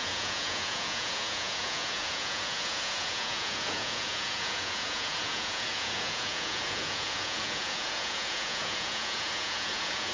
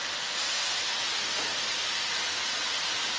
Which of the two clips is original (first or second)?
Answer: second